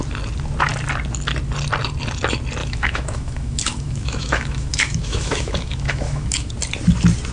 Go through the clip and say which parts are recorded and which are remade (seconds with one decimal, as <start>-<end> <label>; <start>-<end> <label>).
0.0-2.6 recorded; 2.6-6.5 remade; 6.5-7.3 recorded